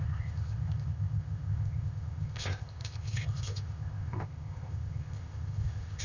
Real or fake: fake